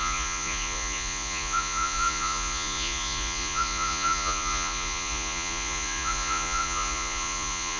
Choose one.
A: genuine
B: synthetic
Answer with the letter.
B